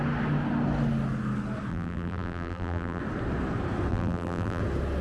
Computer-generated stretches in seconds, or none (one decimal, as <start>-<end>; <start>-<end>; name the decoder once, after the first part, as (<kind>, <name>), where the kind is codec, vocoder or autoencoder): 1.7-3.0 (vocoder, BigVGAN v2); 3.9-4.6